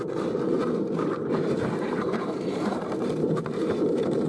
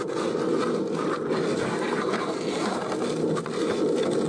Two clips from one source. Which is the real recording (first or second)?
second